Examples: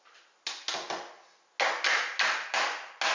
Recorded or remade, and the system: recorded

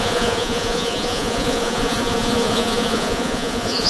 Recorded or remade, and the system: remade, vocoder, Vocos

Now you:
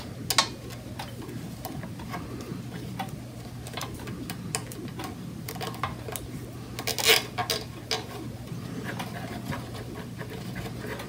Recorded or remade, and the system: recorded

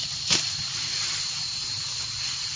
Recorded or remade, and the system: recorded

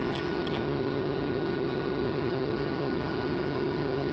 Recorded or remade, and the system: remade, vocoder, HiFi-GAN